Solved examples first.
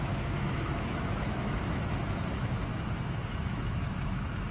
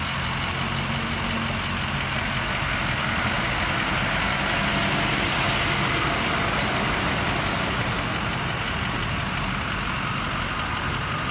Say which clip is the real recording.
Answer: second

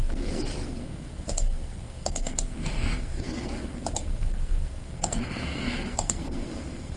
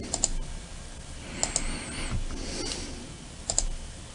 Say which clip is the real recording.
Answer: second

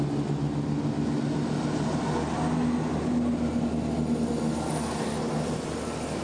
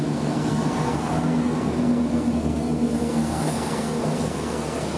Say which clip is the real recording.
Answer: first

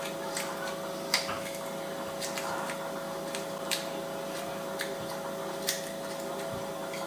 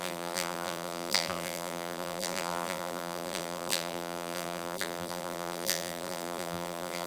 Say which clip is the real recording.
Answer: first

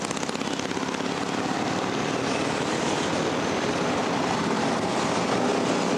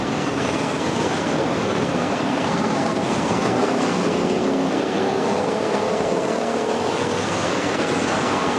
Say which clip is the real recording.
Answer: first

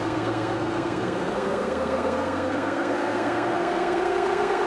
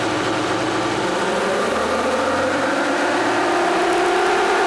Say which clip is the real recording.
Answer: second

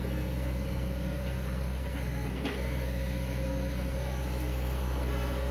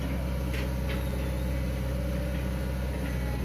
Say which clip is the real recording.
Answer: second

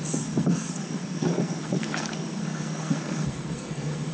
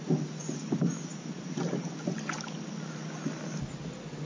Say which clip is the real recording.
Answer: second